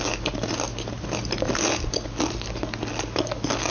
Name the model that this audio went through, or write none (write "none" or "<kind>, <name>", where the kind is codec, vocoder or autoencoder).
none